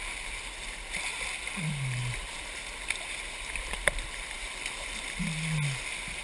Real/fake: real